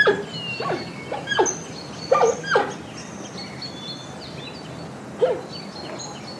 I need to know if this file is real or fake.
real